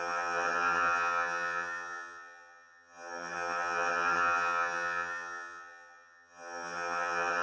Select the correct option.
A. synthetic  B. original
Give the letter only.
A